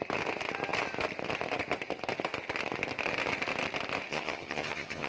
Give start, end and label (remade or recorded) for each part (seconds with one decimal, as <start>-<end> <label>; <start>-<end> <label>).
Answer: 0.0-4.1 recorded; 4.1-5.1 remade